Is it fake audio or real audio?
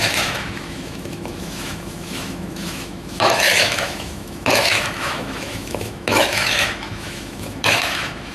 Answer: fake